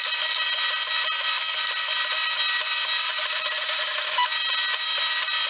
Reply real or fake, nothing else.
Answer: real